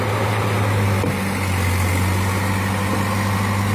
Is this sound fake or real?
real